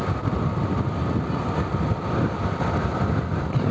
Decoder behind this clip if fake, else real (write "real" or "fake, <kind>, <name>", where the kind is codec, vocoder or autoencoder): real